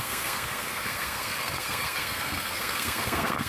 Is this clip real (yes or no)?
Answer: no